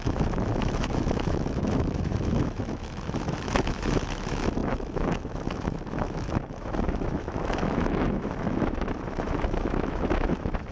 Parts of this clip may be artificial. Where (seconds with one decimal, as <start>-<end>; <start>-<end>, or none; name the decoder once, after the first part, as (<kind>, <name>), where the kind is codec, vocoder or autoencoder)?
0.0-10.7 (autoencoder, DAC-VAE)